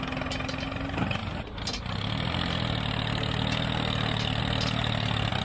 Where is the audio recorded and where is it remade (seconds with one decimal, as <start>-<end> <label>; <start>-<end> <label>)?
0.0-5.4 recorded